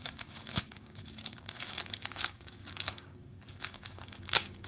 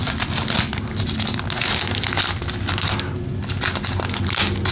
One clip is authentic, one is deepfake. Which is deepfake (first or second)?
first